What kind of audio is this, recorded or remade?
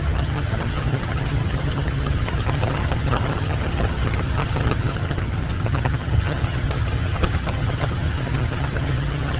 remade